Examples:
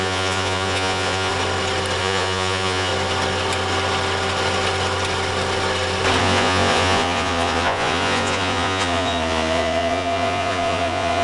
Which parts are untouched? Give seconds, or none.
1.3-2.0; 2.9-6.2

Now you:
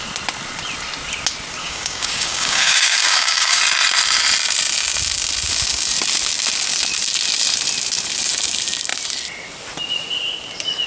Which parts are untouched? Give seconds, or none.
0.0-1.6; 3.6-10.9

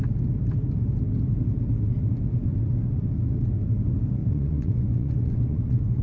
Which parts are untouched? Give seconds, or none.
0.0-4.2

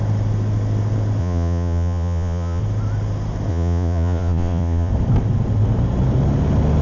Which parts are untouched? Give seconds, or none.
0.0-1.2; 2.6-3.5; 4.9-6.8

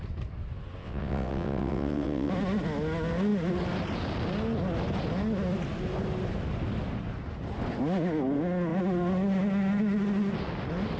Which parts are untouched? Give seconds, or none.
0.0-0.8; 2.3-11.0

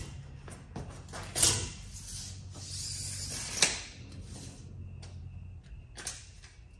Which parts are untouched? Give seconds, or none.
0.0-6.8

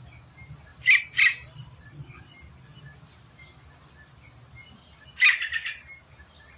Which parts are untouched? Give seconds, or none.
0.0-0.7; 2.1-6.6

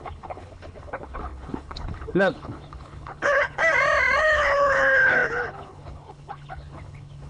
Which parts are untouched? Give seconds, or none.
3.6-4.2